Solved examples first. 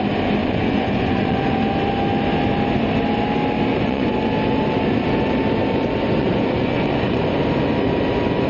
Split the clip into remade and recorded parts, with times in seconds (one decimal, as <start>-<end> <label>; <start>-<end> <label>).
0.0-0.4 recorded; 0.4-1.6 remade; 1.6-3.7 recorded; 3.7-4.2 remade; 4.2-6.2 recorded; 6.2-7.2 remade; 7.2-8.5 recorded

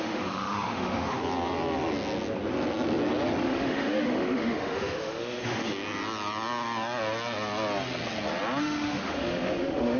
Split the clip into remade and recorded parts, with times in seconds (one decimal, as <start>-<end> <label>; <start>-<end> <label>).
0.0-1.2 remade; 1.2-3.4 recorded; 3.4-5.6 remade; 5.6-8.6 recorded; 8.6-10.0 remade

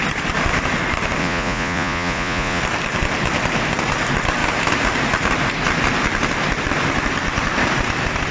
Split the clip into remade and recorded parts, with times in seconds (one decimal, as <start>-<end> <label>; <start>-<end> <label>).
0.0-1.2 recorded; 1.2-2.6 remade; 2.6-8.3 recorded

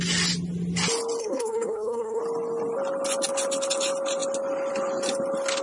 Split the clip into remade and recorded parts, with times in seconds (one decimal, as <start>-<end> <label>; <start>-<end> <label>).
0.0-1.2 recorded; 1.2-2.2 remade; 2.2-5.6 recorded

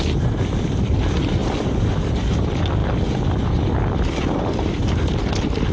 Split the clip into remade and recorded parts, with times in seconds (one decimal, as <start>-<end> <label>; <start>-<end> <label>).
0.0-5.7 recorded

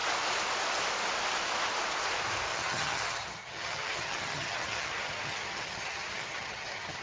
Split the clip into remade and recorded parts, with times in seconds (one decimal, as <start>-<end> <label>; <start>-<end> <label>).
0.0-2.5 recorded; 2.5-7.0 remade

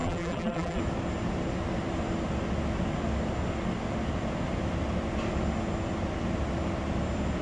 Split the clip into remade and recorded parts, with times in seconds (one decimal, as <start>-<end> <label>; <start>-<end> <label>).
0.0-0.8 remade; 0.8-7.4 recorded